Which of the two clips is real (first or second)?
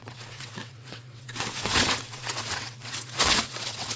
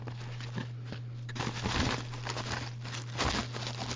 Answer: second